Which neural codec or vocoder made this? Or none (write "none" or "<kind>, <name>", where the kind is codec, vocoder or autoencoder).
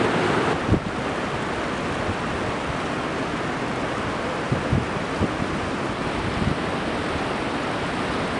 none